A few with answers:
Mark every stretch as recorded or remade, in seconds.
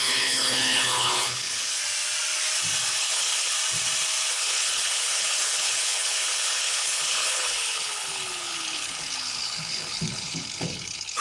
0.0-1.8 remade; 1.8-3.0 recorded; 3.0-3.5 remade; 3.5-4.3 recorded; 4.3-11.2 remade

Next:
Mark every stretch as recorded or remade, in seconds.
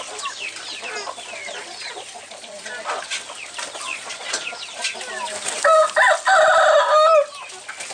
0.0-1.6 recorded; 1.6-2.7 remade; 2.7-3.9 recorded; 3.9-4.5 remade; 4.5-7.9 recorded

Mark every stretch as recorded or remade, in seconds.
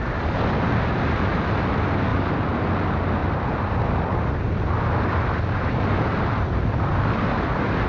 0.0-2.1 recorded; 2.1-2.6 remade; 2.6-3.2 recorded; 3.2-7.5 remade; 7.5-7.9 recorded